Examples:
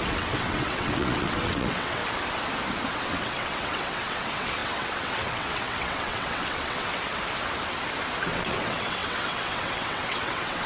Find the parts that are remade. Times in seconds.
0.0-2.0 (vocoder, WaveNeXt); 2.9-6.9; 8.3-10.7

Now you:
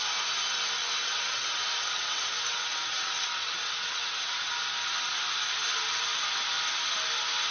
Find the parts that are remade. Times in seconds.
0.8-4.5 (vocoder, WaveNeXt)

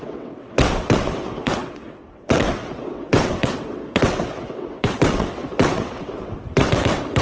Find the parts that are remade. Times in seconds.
0.0-7.2 (vocoder, WaveNeXt)

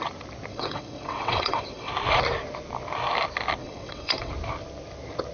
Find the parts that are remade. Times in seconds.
0.5-1.9 (vocoder, WaveNeXt); 3.6-4.3

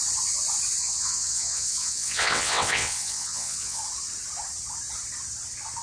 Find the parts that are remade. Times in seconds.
0.8-3.8 (vocoder, WaveNeXt)

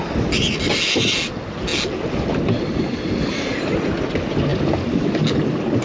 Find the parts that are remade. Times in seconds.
none

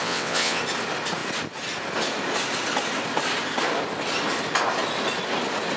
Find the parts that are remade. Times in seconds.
0.0-0.6 (vocoder, WaveNeXt)

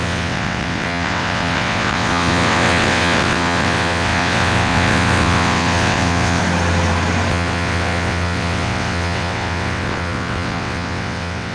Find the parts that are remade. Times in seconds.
0.0-6.4 (vocoder, WaveNeXt); 7.3-11.5